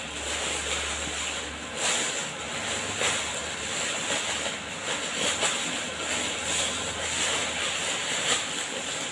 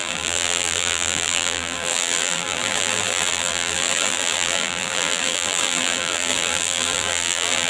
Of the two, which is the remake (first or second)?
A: second